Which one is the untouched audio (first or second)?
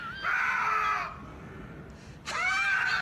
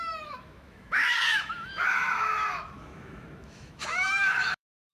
first